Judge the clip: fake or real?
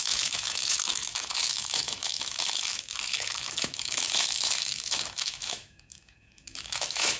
fake